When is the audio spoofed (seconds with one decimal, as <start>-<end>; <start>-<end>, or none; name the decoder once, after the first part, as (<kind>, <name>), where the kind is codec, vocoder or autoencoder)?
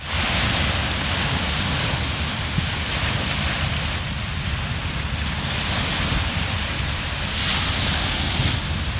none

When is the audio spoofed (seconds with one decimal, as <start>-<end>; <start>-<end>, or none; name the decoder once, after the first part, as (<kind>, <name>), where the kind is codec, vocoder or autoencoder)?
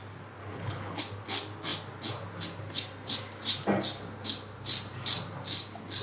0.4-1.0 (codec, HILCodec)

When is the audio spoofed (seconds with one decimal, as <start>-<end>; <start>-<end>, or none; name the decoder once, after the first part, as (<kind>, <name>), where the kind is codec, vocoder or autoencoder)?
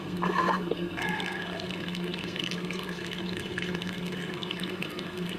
0.0-5.4 (codec, SNAC)